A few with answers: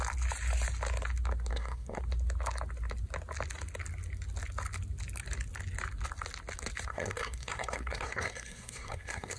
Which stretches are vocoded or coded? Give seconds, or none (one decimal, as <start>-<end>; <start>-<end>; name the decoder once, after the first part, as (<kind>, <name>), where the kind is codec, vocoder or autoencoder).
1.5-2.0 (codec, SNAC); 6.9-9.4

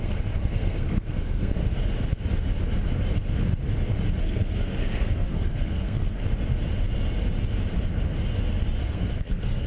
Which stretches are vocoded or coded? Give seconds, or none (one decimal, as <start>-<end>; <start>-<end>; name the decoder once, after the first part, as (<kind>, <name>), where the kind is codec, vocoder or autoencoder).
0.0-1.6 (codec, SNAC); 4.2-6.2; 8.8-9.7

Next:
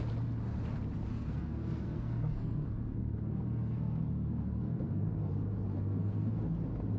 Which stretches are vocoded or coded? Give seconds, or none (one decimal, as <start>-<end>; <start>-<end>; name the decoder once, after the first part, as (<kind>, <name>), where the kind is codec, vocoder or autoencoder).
1.1-5.3 (codec, SNAC); 5.7-6.4

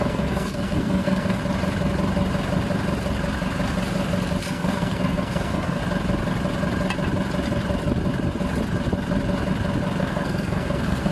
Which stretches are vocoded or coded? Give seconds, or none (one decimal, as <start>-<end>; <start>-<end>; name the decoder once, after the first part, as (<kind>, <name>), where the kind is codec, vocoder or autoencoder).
0.0-1.4 (codec, SNAC); 4.4-5.8; 10.0-11.1

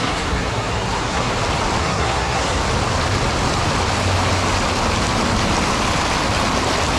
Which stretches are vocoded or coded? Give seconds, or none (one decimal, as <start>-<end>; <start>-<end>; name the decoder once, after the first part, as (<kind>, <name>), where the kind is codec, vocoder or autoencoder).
0.0-1.3 (codec, SNAC); 1.8-2.6

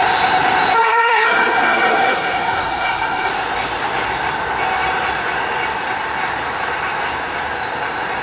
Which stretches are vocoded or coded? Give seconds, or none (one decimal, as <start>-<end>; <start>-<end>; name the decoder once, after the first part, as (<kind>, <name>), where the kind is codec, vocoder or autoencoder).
0.8-3.3 (codec, SNAC)

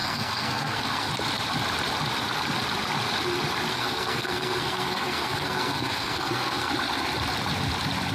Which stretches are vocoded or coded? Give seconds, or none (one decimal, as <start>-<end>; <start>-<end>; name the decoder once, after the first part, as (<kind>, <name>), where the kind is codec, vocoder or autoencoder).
0.0-1.1 (codec, SNAC); 3.7-6.7

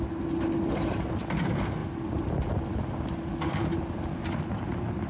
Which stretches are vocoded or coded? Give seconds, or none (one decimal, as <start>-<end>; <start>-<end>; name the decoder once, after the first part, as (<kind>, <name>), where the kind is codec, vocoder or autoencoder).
none